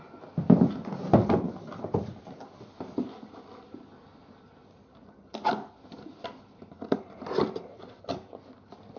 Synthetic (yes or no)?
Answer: no